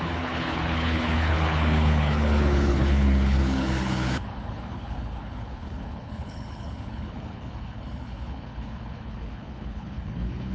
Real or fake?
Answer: fake